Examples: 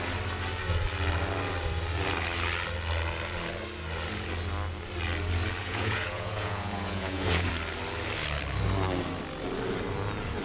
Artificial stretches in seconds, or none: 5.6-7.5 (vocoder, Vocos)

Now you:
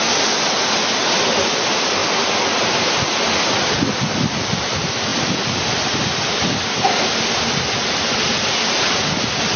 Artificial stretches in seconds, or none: 5.1-5.7 (vocoder, BigVGAN v2)